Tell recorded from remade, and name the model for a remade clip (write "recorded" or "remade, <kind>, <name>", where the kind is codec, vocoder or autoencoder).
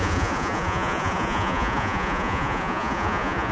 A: remade, vocoder, Vocos